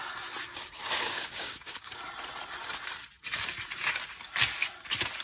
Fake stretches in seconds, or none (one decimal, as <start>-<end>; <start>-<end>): 0.5-2.0